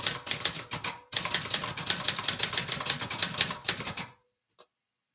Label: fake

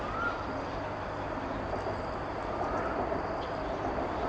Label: real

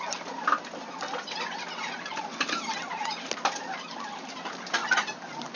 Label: real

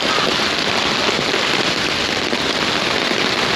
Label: real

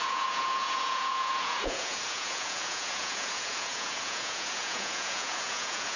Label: fake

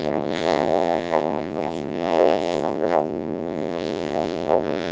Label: fake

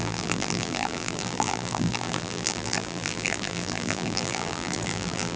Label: fake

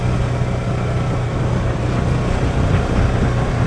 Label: real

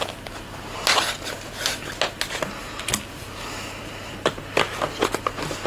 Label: real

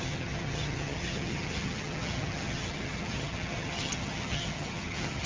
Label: fake